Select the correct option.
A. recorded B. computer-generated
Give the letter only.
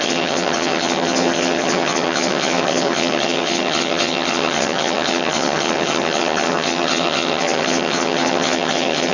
B